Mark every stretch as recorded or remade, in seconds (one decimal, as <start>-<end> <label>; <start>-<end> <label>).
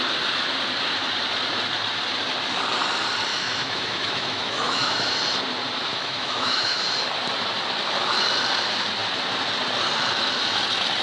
0.0-3.3 recorded; 3.3-5.1 remade; 5.1-5.9 recorded; 5.9-6.8 remade; 6.8-11.0 recorded